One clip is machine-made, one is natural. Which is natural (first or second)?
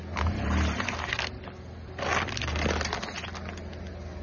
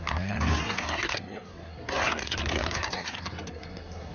first